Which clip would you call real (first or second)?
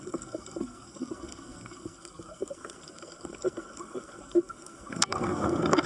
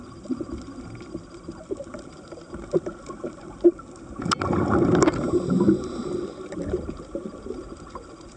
second